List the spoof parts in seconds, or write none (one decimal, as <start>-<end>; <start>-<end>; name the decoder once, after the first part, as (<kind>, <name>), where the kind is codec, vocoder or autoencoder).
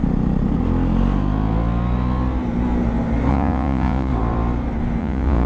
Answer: 3.3-4.1 (vocoder, Vocos); 5.0-5.5